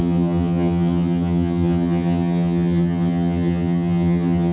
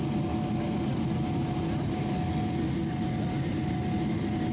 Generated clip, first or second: first